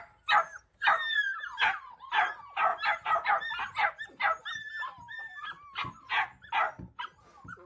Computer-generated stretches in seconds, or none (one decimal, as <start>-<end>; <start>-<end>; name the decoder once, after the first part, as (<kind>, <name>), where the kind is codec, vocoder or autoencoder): none